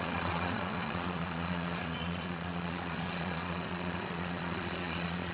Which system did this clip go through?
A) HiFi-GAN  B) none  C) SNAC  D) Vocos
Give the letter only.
D